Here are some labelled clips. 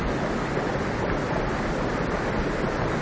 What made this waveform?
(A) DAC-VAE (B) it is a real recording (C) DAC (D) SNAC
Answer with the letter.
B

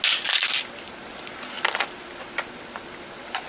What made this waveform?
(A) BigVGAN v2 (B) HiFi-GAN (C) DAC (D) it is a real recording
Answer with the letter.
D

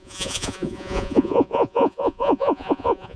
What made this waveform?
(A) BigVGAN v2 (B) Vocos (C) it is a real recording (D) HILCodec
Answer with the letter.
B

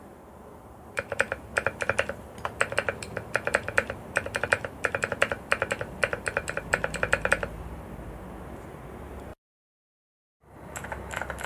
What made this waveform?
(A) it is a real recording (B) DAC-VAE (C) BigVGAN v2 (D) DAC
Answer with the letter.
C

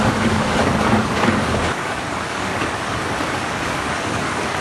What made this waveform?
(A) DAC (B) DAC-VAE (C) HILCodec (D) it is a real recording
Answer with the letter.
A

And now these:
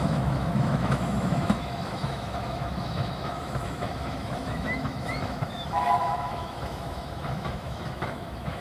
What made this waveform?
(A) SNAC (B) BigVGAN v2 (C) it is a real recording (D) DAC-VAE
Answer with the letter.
D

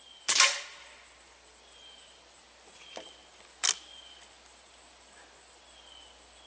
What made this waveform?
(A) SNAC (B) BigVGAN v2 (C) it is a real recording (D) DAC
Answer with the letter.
C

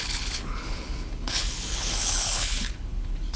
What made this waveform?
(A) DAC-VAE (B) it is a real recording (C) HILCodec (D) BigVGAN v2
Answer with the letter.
C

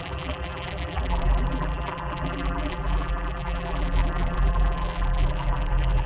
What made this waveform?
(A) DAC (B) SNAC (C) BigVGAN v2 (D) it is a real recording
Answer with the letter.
C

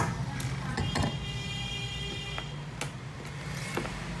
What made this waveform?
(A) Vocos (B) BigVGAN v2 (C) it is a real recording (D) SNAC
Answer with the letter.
C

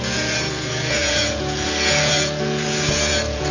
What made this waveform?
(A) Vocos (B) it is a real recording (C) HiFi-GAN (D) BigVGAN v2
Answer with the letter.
A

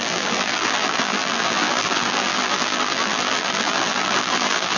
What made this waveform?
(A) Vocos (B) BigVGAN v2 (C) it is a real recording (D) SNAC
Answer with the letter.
B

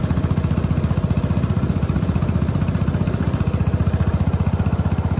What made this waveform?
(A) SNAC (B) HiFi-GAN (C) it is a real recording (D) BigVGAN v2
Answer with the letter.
C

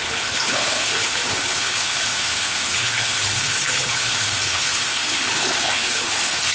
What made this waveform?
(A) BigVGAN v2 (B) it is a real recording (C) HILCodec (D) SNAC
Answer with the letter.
C